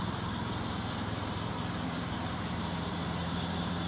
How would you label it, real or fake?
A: fake